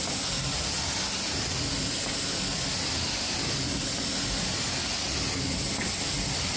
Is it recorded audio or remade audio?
recorded